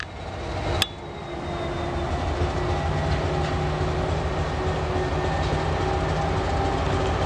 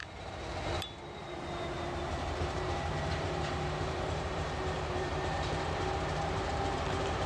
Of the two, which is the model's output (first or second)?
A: second